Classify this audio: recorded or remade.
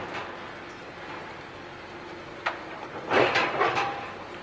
recorded